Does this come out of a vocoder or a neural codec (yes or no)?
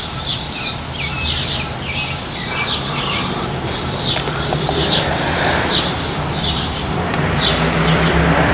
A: yes